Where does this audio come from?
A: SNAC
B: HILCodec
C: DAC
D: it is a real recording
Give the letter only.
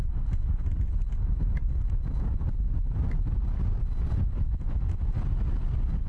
D